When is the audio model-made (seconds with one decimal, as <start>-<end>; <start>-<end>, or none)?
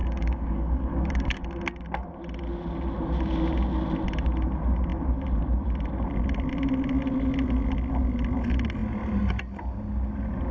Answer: 0.0-1.4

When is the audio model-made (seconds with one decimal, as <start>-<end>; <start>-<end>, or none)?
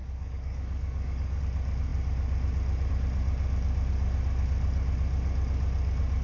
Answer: 0.0-1.4